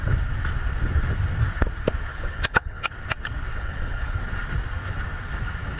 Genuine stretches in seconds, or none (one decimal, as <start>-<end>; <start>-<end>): 0.0-2.1; 2.9-3.5; 4.2-5.8